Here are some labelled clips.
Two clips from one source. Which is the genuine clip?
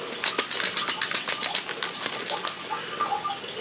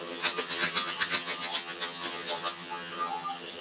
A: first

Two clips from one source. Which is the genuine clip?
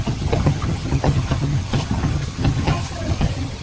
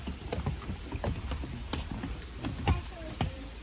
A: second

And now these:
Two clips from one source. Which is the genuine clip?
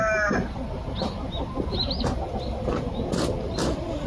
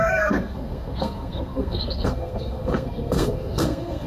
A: first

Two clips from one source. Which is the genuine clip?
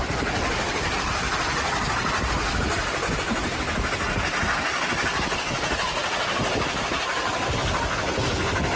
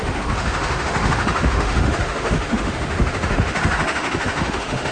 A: first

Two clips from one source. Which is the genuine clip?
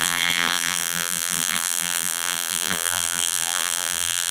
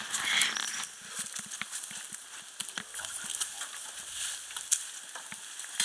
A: second